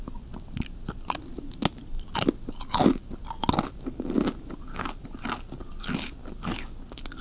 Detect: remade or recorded recorded